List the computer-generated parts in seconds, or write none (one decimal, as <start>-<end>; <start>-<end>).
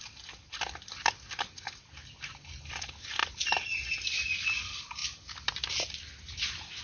none